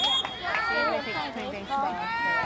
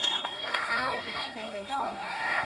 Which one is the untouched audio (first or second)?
first